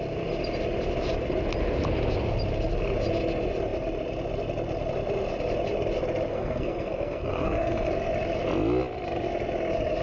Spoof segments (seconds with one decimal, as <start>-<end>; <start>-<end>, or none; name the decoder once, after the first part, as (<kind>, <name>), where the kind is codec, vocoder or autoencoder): 6.3-7.9 (codec, SNAC)